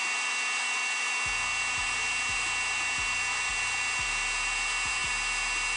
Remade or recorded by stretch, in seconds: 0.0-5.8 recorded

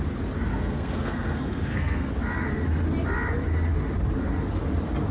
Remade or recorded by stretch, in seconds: 0.0-0.5 recorded; 0.5-2.1 remade; 2.1-5.1 recorded

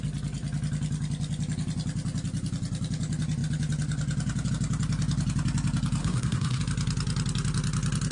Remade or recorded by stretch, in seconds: 0.0-6.0 recorded; 6.0-6.6 remade; 6.6-8.1 recorded

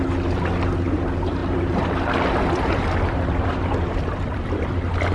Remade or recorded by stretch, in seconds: 0.0-5.1 recorded

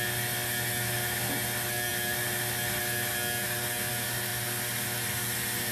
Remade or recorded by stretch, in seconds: 0.0-5.7 recorded

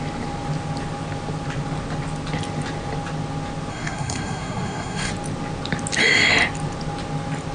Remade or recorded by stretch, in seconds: 0.0-3.7 recorded; 3.7-5.1 remade; 5.1-7.5 recorded

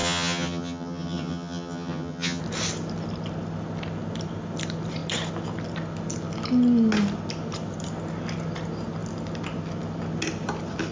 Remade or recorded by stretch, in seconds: 0.0-2.4 remade; 2.4-10.9 recorded

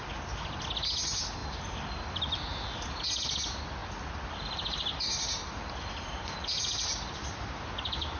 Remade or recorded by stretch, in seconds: 0.0-8.2 recorded